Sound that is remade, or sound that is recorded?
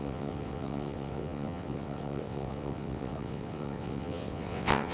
remade